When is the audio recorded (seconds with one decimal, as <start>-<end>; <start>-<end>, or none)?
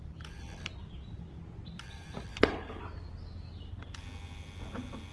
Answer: 0.0-2.3; 2.8-5.1